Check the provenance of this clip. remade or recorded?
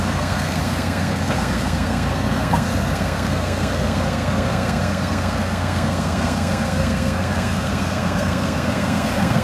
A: remade